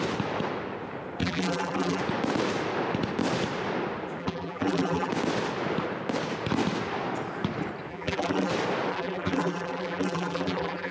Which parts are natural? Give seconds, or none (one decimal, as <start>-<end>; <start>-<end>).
0.0-1.2; 2.0-4.2; 5.1-7.9; 8.5-8.9